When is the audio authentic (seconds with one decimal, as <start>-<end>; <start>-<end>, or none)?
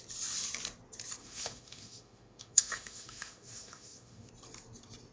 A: 0.0-1.2; 4.3-5.1